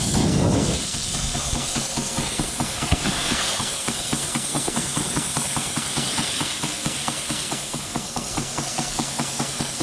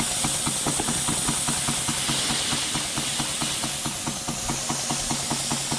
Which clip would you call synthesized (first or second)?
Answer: first